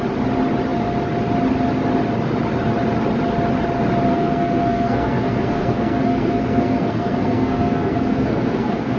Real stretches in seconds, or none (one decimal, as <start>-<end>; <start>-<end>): 0.0-4.1